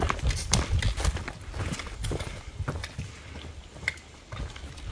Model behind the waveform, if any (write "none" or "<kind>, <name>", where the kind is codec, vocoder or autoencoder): none